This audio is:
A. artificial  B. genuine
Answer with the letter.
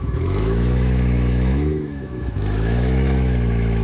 A